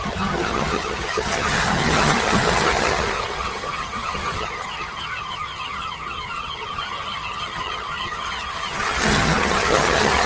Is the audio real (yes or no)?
no